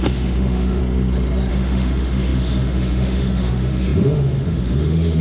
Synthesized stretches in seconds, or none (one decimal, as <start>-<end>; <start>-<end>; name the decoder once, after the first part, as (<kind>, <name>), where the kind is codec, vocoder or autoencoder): 0.0-0.8 (autoencoder, DAC-VAE); 1.5-5.2

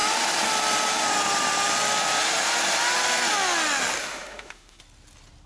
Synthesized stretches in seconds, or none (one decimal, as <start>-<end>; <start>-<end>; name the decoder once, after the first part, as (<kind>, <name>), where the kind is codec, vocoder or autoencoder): 4.0-4.8 (autoencoder, DAC-VAE)

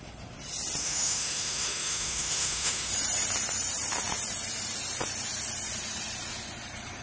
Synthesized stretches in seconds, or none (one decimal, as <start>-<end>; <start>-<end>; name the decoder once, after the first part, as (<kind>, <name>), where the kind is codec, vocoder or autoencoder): 0.8-2.9 (autoencoder, DAC-VAE)

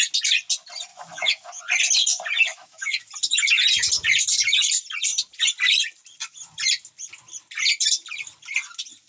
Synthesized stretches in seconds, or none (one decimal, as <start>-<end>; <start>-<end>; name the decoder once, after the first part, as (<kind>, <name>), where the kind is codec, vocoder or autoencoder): 0.9-1.6 (autoencoder, DAC-VAE); 2.5-3.1

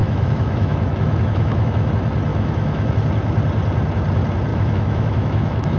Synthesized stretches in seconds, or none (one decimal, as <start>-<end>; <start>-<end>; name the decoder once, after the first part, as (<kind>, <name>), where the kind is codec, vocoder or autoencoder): 0.0-1.9 (autoencoder, DAC-VAE); 2.3-2.9; 4.5-5.8

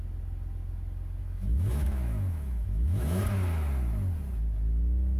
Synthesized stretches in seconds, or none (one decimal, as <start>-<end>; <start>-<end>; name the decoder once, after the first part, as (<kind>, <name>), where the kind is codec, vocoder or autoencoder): 1.2-3.2 (autoencoder, DAC-VAE)

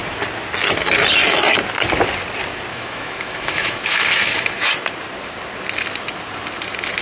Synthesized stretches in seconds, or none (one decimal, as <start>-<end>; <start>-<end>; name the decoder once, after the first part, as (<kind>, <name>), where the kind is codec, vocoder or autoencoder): 2.7-4.7 (autoencoder, DAC-VAE)